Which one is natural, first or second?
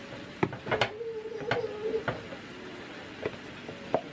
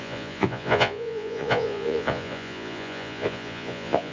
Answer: first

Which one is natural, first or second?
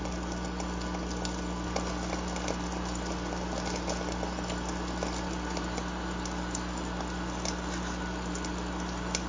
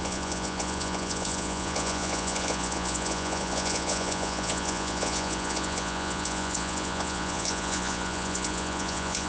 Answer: first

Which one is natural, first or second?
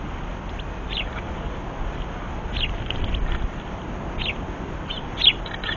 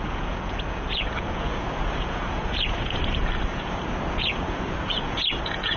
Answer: first